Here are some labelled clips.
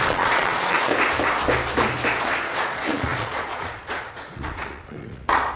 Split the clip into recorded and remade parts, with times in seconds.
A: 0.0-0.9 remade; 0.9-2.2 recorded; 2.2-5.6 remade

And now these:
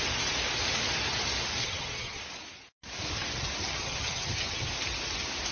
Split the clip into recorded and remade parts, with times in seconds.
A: 0.0-1.6 recorded; 1.6-2.2 remade; 2.2-3.6 recorded; 3.6-4.7 remade; 4.7-5.5 recorded

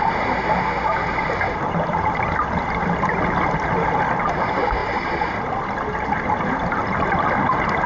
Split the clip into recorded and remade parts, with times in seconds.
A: 0.0-7.9 recorded

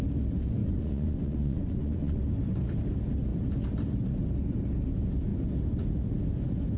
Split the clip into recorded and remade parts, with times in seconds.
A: 0.0-0.6 recorded; 0.6-2.2 remade; 2.2-6.8 recorded

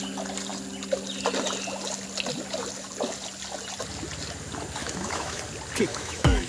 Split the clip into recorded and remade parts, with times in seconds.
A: 0.0-4.8 recorded; 4.8-5.4 remade; 5.4-5.9 recorded; 5.9-6.5 remade

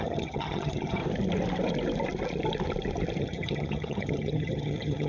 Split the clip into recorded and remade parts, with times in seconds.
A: 0.0-1.0 remade; 1.0-3.2 recorded; 3.2-5.1 remade

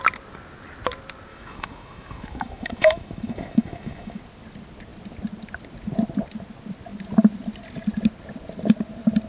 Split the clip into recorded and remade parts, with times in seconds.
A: 0.0-1.3 recorded; 1.3-4.2 remade; 4.2-9.3 recorded